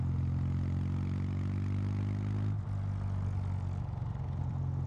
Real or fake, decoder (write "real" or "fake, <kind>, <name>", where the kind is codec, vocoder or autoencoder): real